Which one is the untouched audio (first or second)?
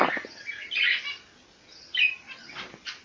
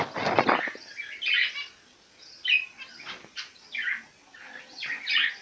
second